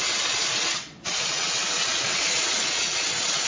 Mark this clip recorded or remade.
remade